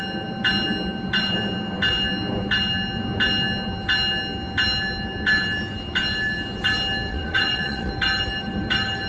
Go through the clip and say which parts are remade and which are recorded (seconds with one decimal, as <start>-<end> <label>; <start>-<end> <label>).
0.0-7.1 recorded; 7.1-7.9 remade; 7.9-9.1 recorded